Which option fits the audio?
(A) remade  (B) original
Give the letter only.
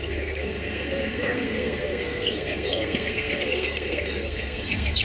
A